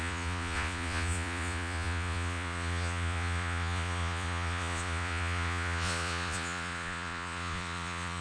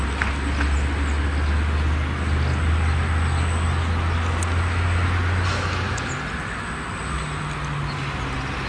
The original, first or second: second